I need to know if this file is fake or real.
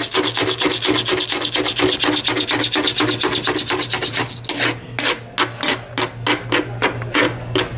real